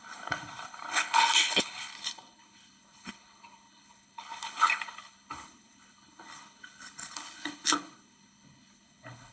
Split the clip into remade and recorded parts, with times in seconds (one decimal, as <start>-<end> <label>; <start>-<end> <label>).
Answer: 0.0-9.3 remade